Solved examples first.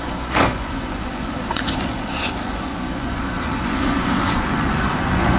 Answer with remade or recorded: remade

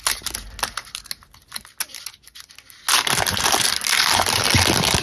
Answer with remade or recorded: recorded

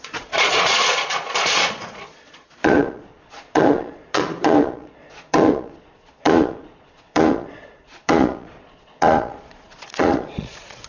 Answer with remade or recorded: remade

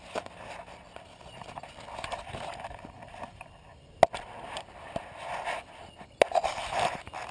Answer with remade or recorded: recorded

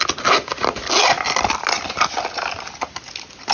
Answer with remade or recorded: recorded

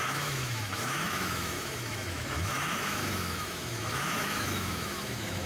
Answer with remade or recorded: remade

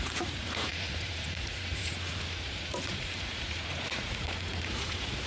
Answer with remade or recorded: remade